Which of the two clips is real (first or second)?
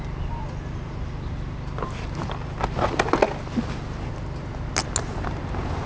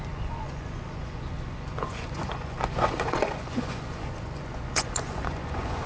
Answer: first